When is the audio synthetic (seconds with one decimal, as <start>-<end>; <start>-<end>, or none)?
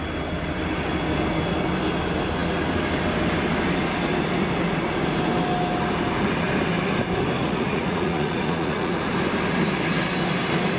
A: 7.4-9.1